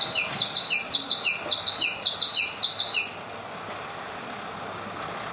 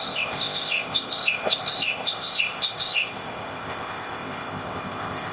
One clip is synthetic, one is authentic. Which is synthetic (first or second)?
second